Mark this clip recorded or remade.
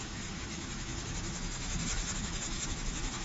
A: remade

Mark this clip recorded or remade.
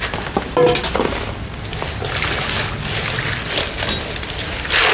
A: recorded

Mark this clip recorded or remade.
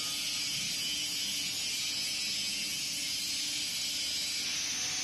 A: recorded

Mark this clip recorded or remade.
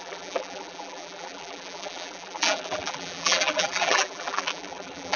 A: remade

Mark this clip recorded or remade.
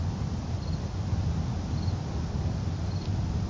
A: recorded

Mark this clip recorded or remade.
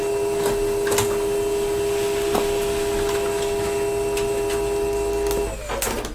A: recorded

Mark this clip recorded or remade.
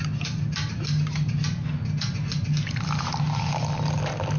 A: recorded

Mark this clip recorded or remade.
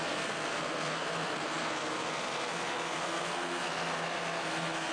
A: remade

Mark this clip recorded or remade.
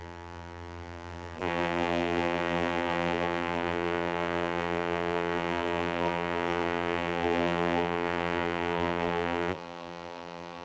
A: remade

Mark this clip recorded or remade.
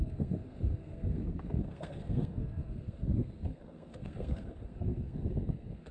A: remade